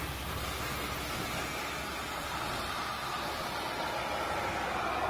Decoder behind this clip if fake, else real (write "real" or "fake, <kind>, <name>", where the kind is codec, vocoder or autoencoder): real